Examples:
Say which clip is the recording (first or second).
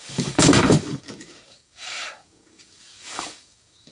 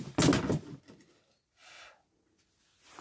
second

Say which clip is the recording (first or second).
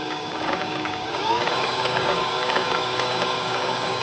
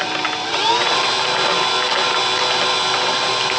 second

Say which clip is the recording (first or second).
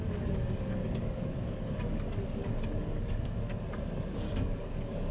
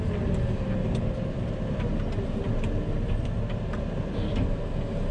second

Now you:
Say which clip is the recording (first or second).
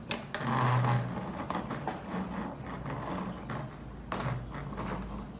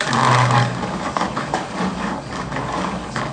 first